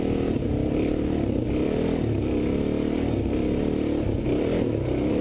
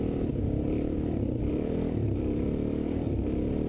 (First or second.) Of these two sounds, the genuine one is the first